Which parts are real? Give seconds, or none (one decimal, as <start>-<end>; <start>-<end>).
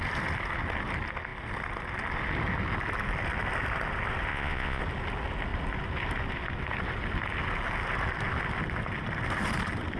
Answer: 0.0-4.3; 4.8-10.0